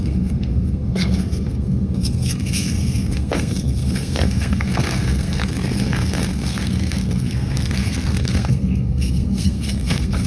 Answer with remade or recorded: remade